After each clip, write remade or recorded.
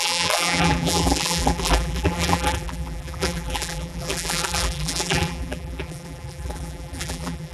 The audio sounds remade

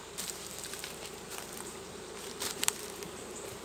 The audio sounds remade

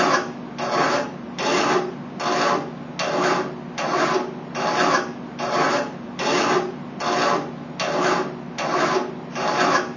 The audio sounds recorded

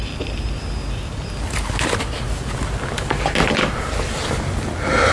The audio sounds recorded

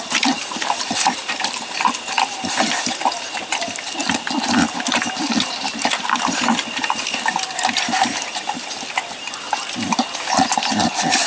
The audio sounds remade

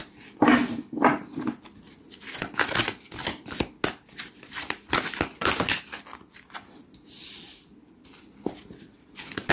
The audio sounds recorded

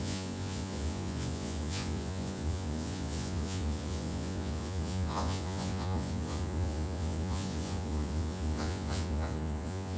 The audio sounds remade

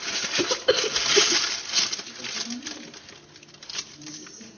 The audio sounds recorded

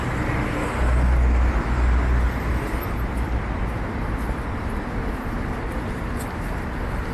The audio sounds recorded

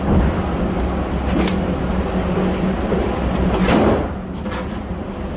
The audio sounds recorded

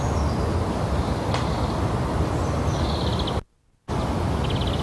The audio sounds recorded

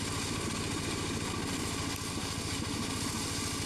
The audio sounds recorded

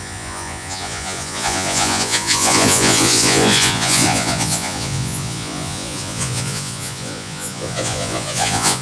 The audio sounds remade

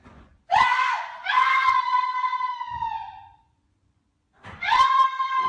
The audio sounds remade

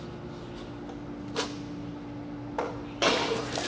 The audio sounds recorded